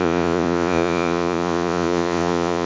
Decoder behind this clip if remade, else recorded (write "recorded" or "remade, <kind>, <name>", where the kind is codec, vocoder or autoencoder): remade, vocoder, Vocos